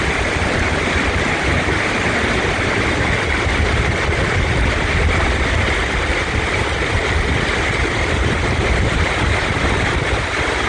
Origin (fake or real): fake